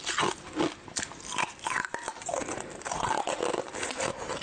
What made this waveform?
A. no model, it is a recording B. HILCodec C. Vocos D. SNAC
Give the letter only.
A